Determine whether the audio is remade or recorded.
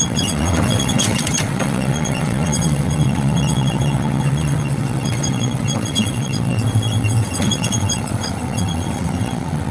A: remade